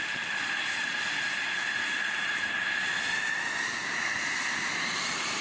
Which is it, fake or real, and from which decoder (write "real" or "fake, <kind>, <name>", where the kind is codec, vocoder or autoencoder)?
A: fake, vocoder, BigVGAN v2